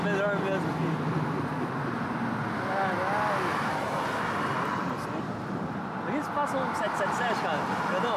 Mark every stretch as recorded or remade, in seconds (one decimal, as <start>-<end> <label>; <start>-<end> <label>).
0.0-8.2 recorded